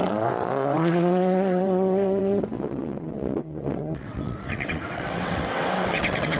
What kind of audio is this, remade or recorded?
remade